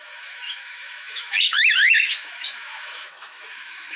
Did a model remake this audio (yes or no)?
yes